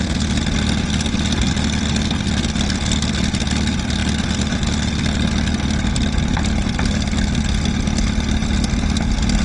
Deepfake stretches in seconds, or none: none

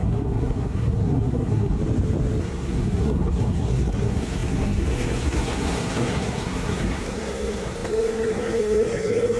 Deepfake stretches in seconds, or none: 0.0-1.8 (codec, SNAC); 2.4-9.4